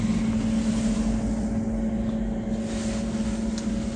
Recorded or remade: recorded